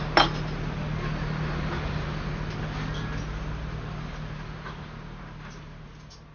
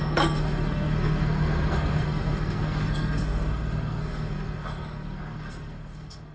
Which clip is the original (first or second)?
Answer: first